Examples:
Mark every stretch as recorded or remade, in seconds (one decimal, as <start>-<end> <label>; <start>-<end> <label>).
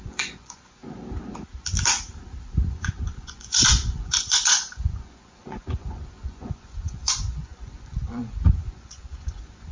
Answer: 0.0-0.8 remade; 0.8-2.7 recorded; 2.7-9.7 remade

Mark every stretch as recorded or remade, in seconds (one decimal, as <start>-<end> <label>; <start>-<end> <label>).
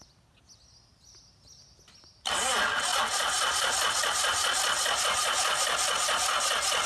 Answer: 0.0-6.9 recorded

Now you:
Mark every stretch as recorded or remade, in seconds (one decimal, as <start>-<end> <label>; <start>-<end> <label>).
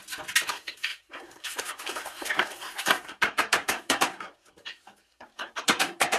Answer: 0.0-0.5 recorded; 0.5-6.2 remade